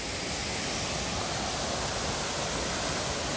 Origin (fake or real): real